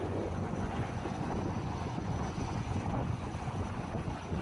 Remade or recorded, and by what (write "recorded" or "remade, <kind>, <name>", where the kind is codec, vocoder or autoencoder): remade, vocoder, Vocos